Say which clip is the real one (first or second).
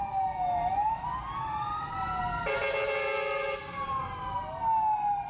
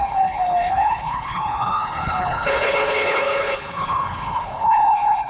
first